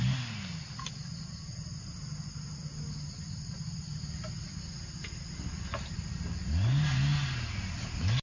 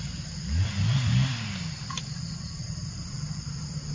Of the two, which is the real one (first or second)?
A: first